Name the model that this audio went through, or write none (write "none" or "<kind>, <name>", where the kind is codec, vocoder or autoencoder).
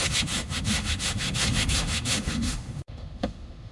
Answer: autoencoder, DAC-VAE